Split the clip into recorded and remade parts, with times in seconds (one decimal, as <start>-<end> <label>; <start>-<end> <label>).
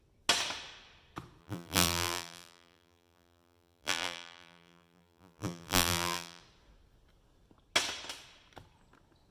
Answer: 0.0-1.4 recorded; 1.4-6.4 remade; 6.4-9.3 recorded